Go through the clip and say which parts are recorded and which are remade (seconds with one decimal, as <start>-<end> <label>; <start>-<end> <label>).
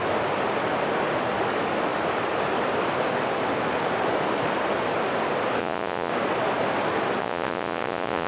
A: 0.0-5.6 recorded; 5.6-6.1 remade; 6.1-7.2 recorded; 7.2-8.3 remade